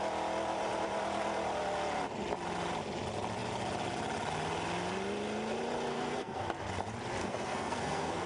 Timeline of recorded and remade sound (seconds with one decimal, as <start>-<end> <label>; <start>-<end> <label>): 0.0-5.9 recorded; 5.9-6.4 remade; 6.4-7.2 recorded; 7.2-8.3 remade